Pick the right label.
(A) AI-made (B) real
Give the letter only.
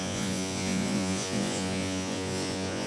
A